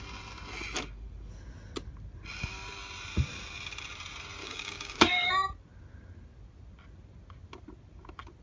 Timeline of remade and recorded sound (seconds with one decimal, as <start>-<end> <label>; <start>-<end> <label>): 0.0-4.4 recorded; 4.4-5.3 remade; 5.3-8.4 recorded